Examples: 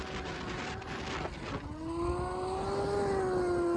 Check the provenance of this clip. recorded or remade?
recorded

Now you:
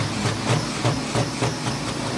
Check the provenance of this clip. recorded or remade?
recorded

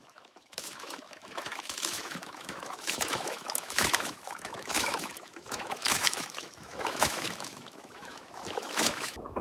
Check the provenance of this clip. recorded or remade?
remade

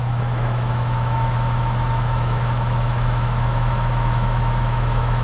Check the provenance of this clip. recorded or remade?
remade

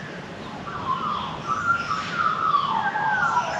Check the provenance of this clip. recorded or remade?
recorded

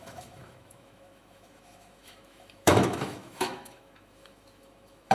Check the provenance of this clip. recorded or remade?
remade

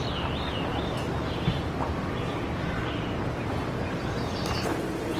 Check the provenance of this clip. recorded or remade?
recorded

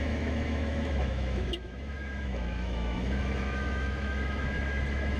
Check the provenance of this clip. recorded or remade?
remade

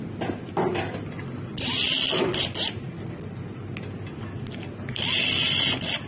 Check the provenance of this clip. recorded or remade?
recorded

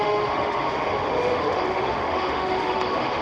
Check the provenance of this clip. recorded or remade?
remade